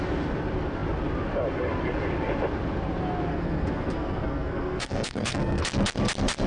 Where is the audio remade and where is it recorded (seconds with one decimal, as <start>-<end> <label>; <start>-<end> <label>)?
0.0-3.3 recorded; 3.3-5.6 remade; 5.6-6.5 recorded